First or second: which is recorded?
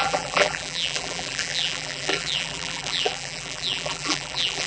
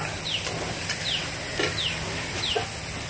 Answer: second